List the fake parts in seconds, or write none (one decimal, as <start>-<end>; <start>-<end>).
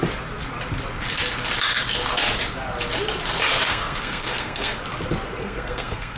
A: 3.7-4.7; 5.4-6.2